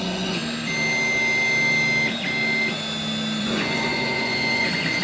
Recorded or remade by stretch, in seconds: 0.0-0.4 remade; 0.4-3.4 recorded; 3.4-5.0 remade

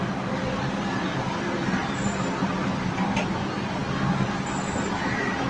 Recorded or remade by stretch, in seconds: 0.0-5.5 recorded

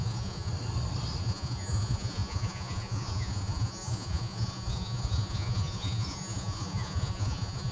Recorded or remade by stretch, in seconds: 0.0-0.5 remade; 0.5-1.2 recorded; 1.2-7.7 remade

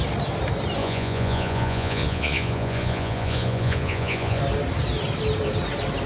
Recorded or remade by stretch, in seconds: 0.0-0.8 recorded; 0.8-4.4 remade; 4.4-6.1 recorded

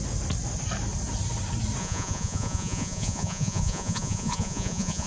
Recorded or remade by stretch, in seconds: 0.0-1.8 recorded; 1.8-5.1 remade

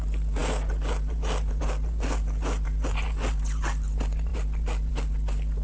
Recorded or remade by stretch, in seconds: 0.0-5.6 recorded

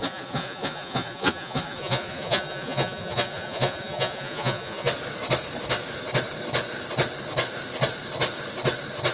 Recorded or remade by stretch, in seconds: 0.0-4.9 remade; 4.9-9.1 recorded

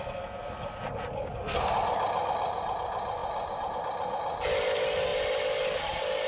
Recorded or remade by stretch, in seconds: 0.0-6.3 recorded